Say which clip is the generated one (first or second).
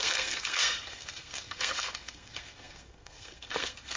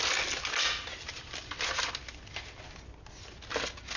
first